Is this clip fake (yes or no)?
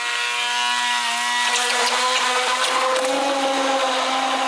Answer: no